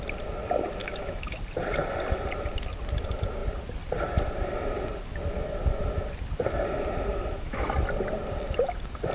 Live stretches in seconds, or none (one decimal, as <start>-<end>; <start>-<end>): 0.0-0.8; 1.4-7.1; 7.7-9.1